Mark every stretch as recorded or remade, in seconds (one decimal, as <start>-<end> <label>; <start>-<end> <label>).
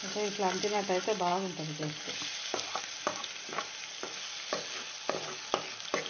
0.0-3.0 recorded; 3.0-3.9 remade; 3.9-6.1 recorded